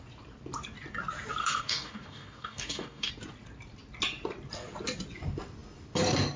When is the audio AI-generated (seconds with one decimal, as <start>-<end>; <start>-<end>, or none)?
1.4-3.1